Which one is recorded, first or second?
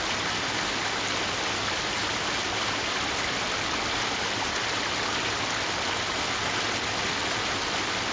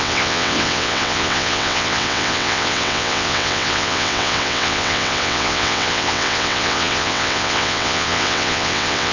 first